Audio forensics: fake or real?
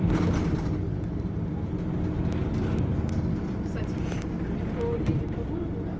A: real